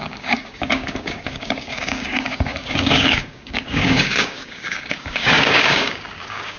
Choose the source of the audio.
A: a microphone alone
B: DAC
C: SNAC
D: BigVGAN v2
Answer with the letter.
B